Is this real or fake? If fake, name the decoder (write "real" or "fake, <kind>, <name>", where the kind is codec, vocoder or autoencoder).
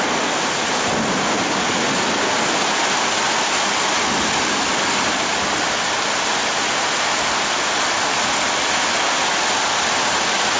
real